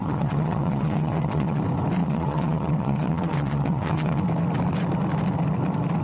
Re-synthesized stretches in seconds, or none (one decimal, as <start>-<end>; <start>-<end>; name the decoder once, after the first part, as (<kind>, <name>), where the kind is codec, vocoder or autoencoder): 0.0-1.6 (vocoder, WaveNeXt); 2.0-4.2